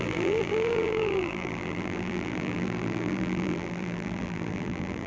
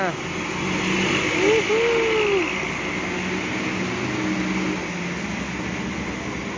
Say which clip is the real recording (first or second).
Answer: second